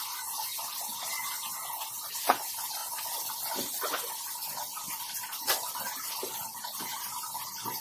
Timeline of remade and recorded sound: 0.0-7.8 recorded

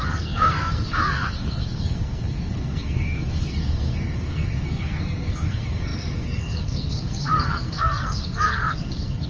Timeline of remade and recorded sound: 0.0-9.3 remade

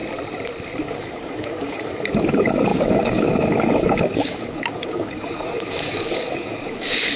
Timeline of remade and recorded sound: 0.0-0.8 recorded; 0.8-7.2 remade

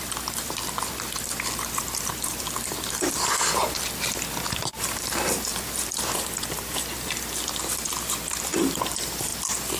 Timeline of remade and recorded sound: 0.0-9.3 remade; 9.3-9.8 recorded

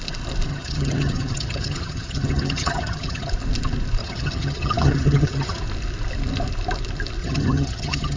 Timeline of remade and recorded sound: 0.0-0.5 recorded; 0.5-3.3 remade; 3.3-4.0 recorded; 4.0-5.6 remade; 5.6-7.2 recorded; 7.2-8.2 remade

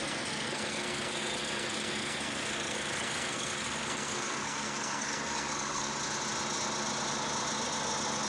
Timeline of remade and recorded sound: 0.0-5.9 remade; 5.9-8.3 recorded

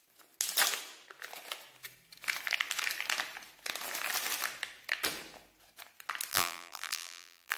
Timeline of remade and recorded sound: 0.0-6.3 recorded; 6.3-7.6 remade

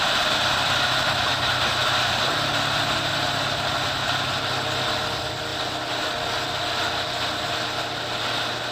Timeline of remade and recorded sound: 0.0-1.3 remade; 1.3-4.4 recorded; 4.4-5.5 remade; 5.5-6.9 recorded; 6.9-8.7 remade